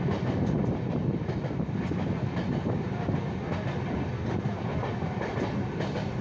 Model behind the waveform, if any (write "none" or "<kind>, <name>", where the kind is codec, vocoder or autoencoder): none